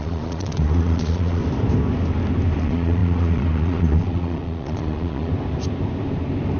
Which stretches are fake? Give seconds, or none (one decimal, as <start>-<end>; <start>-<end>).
0.0-1.4; 2.6-5.3